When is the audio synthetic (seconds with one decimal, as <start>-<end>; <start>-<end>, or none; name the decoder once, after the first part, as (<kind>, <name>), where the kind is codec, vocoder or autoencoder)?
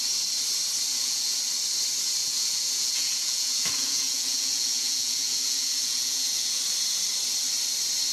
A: 0.9-1.4 (vocoder, Vocos); 2.2-6.6